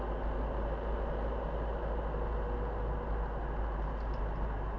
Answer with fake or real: real